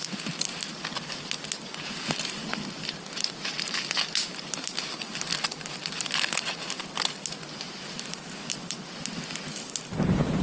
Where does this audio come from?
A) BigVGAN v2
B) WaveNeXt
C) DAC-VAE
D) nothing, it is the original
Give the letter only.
D